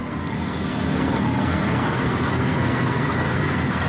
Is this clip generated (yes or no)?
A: yes